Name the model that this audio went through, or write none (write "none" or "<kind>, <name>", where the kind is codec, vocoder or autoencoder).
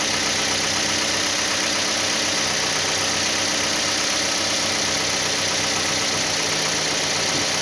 none